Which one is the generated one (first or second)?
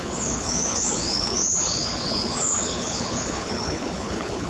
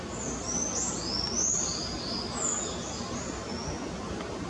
first